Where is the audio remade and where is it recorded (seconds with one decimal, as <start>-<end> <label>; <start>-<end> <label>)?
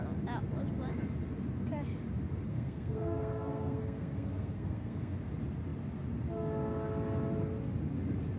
0.0-2.5 recorded; 2.5-5.2 remade; 5.2-8.4 recorded